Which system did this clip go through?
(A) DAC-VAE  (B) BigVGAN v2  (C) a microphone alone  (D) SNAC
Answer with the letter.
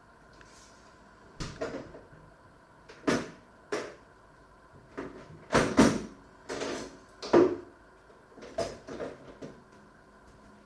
C